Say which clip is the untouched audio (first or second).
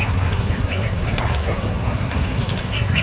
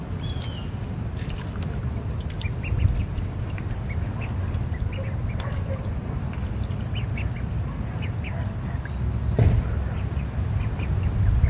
second